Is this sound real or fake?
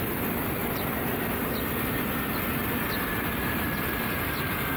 real